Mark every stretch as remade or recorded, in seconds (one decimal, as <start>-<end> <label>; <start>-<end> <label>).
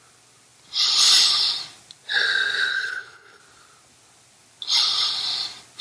0.0-2.7 recorded; 2.7-3.4 remade; 3.4-5.8 recorded